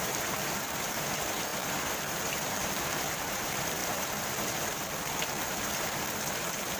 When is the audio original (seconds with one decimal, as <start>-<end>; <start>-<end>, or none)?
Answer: none